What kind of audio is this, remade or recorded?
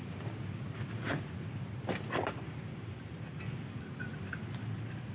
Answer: recorded